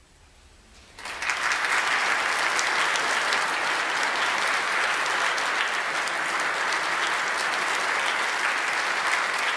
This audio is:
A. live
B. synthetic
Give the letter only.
A